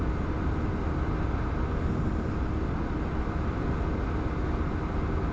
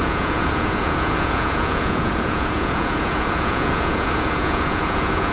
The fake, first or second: second